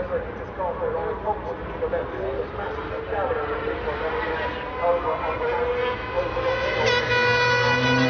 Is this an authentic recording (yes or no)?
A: yes